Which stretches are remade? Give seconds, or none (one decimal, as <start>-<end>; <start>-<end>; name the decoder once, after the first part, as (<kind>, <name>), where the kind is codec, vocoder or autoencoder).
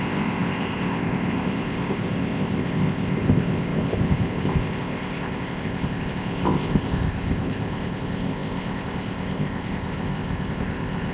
0.0-11.1 (codec, ZipCodec)